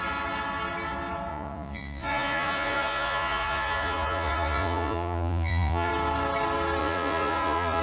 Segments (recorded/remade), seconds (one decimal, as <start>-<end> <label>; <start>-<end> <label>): 0.0-1.3 recorded; 1.3-5.9 remade; 5.9-6.8 recorded; 6.8-7.8 remade